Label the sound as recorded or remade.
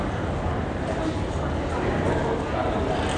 recorded